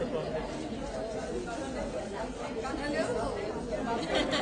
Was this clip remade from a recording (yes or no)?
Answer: no